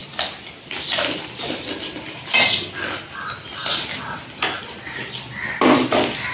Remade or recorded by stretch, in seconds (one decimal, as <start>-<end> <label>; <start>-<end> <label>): 0.0-6.3 recorded

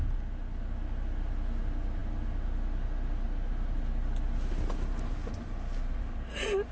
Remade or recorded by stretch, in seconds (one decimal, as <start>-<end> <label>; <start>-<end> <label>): 0.0-6.7 recorded

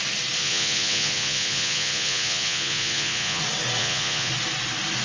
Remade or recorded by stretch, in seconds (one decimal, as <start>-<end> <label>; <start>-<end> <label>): 0.0-0.4 recorded; 0.4-3.4 remade; 3.4-3.8 recorded; 3.8-4.3 remade; 4.3-5.0 recorded

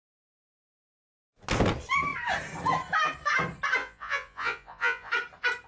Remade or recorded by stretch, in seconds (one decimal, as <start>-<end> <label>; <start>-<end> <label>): 0.0-3.8 recorded; 3.8-5.1 remade; 5.1-5.7 recorded